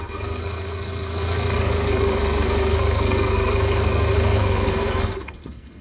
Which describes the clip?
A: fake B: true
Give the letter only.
A